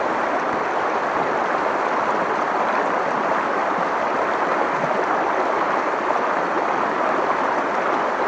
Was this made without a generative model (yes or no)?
yes